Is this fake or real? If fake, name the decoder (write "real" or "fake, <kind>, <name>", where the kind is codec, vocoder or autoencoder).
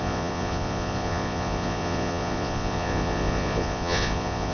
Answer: fake, vocoder, Vocos